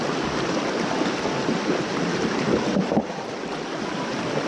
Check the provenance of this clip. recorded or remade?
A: remade